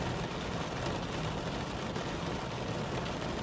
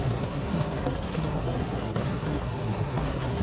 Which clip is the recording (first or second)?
first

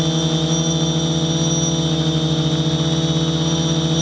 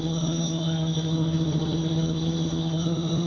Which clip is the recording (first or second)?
first